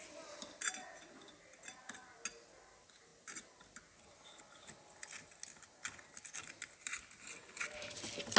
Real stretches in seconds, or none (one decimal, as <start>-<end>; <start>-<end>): 0.0-8.4